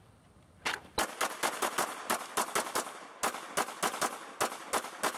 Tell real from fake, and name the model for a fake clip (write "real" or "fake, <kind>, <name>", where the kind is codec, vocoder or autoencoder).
real